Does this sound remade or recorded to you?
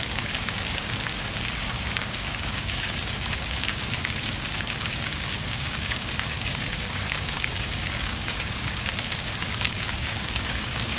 remade